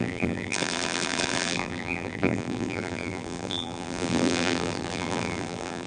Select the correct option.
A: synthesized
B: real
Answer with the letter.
A